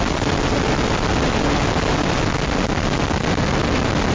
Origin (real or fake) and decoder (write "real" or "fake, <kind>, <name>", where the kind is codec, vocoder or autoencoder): real